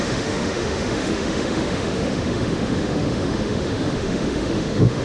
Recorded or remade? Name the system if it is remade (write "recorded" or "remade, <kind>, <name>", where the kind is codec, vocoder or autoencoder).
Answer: remade, autoencoder, DAC-VAE